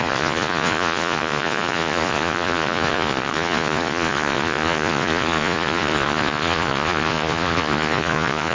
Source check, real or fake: fake